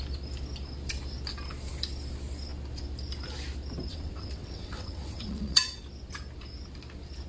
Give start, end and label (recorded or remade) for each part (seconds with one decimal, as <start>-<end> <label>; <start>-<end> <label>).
0.0-3.9 recorded; 3.9-5.8 remade; 5.8-7.3 recorded